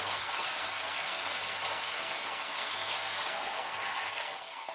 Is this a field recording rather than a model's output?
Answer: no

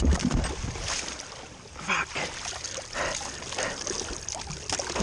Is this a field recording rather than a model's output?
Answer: yes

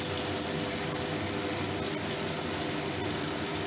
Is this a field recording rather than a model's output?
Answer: yes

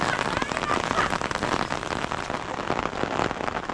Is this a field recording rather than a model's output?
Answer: yes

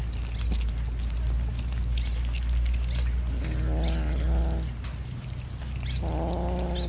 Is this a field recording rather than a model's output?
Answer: yes